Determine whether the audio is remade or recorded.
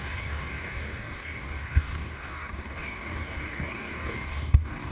remade